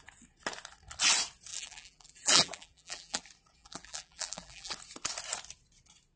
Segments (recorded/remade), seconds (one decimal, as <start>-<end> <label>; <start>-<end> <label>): 0.0-1.5 recorded; 1.5-3.2 remade; 3.2-3.6 recorded; 3.6-4.7 remade; 4.7-6.2 recorded